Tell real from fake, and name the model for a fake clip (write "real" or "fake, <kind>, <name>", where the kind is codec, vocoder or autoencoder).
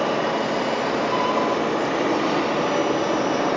real